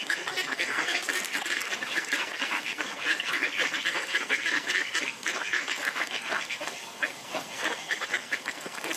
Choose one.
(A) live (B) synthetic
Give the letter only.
B